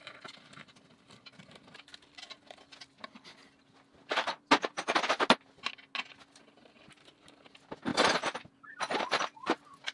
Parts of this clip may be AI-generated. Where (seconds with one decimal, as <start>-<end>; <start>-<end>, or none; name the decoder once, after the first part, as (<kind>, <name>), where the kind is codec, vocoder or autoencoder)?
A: none